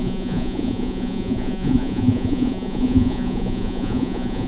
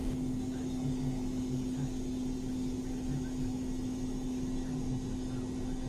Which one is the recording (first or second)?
second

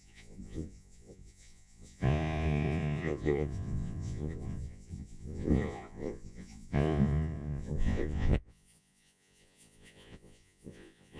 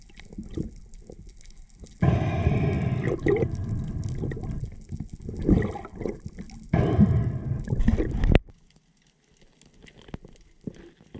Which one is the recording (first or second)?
second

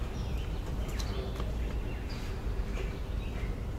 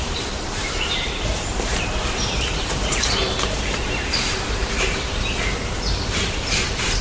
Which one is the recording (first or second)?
first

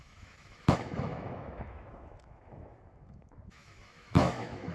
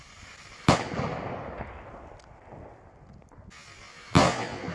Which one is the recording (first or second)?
second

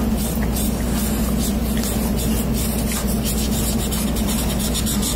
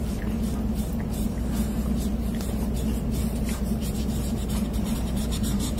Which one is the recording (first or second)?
first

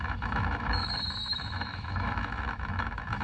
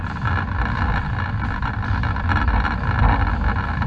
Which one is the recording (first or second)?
second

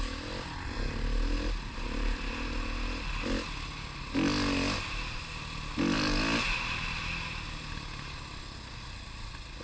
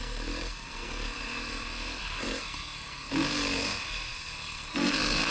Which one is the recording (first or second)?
first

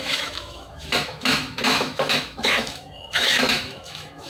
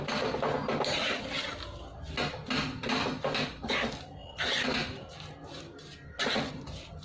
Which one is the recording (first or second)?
second